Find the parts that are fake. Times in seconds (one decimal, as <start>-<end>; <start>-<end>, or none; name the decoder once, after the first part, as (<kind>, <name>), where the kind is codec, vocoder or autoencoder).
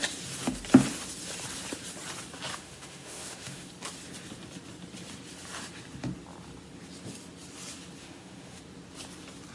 2.5-3.7 (autoencoder, DAC-VAE); 8.0-8.6